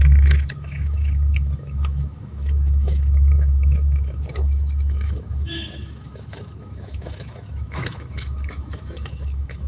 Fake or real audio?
fake